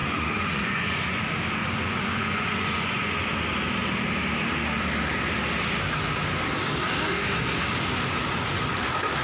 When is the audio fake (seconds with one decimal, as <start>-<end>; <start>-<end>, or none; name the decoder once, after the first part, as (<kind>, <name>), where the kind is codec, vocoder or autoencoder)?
0.0-1.2 (vocoder, Vocos); 1.6-3.1